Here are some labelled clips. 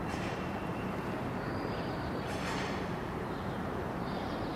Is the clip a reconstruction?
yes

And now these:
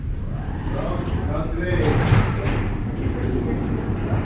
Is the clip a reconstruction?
yes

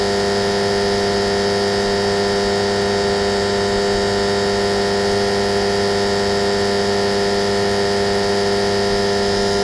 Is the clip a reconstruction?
no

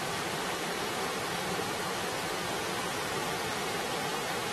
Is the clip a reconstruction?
yes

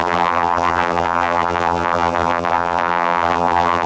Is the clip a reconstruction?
yes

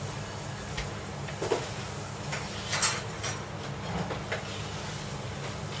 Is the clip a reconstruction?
no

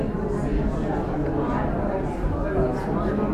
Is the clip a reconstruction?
no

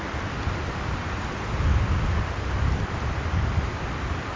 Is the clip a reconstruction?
yes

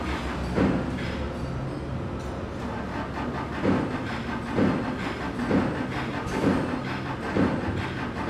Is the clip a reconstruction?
no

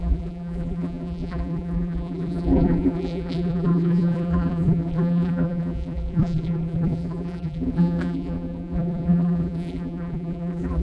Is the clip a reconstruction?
yes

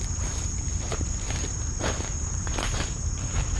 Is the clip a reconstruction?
yes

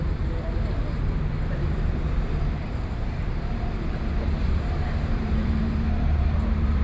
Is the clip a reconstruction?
yes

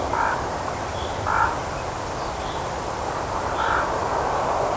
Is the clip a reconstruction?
no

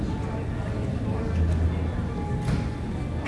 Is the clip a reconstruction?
no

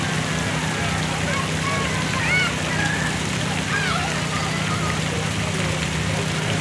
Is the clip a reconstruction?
no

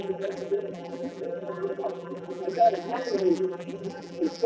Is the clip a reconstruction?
yes